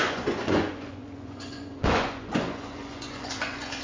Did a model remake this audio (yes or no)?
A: yes